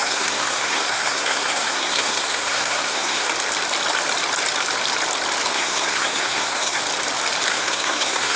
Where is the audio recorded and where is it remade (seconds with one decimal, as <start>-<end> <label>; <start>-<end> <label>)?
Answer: 0.0-3.3 remade; 3.3-5.5 recorded; 5.5-6.8 remade; 6.8-7.5 recorded; 7.5-8.4 remade